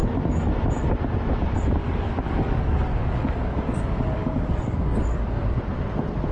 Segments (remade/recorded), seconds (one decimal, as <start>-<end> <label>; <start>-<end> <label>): 0.0-1.8 recorded; 1.8-5.6 remade; 5.6-6.3 recorded